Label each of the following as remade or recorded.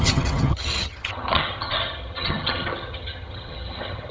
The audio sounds remade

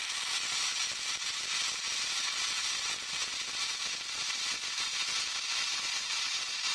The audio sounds recorded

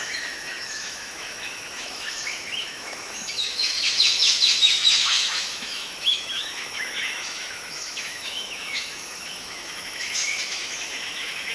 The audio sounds remade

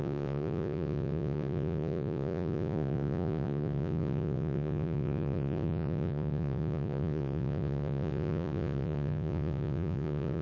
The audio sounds remade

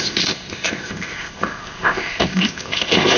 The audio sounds remade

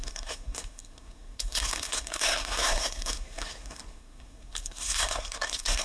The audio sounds remade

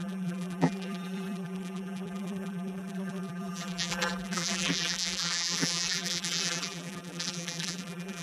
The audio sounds remade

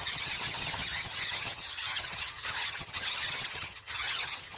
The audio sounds remade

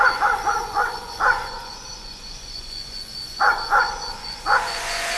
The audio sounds remade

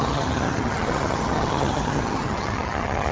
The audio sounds remade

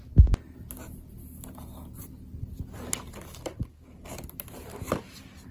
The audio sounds recorded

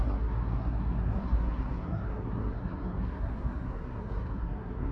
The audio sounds remade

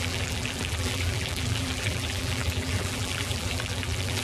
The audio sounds remade